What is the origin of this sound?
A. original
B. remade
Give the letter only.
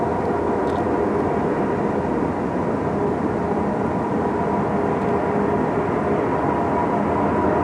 A